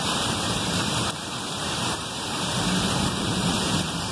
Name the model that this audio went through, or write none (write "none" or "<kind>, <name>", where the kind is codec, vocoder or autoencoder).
vocoder, BigVGAN v2